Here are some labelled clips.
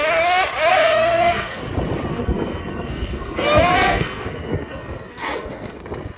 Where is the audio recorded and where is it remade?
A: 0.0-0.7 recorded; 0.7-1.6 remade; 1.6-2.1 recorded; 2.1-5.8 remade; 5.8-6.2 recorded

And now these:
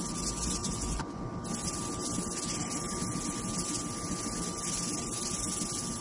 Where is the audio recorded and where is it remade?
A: 0.0-0.6 recorded; 0.6-1.2 remade; 1.2-6.0 recorded

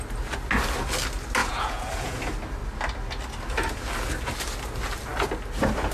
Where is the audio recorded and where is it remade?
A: 0.0-1.4 recorded; 1.4-2.2 remade; 2.2-5.9 recorded

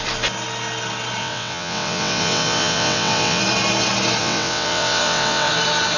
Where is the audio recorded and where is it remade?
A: 0.0-1.2 recorded; 1.2-3.4 remade; 3.4-4.2 recorded; 4.2-5.5 remade; 5.5-6.0 recorded

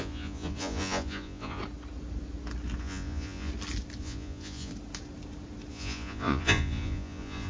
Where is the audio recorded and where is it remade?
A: 0.0-1.6 remade; 1.6-2.8 recorded; 2.8-3.5 remade; 3.5-4.0 recorded; 4.0-4.7 remade; 4.7-5.7 recorded; 5.7-7.5 remade

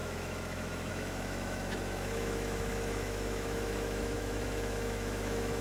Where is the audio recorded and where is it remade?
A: 0.0-5.6 remade

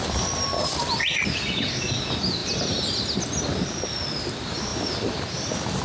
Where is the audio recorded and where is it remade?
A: 0.0-1.4 remade; 1.4-4.7 recorded; 4.7-5.8 remade

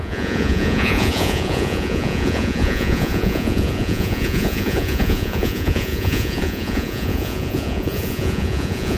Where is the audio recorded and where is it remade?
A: 0.0-9.0 remade